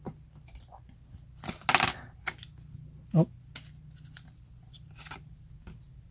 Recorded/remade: recorded